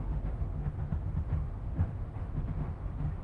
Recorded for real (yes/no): no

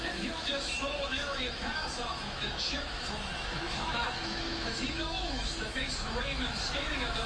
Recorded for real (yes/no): no